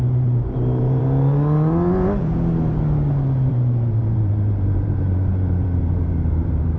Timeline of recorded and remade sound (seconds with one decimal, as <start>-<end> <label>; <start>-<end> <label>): 0.0-1.0 remade; 1.0-3.5 recorded; 3.5-6.8 remade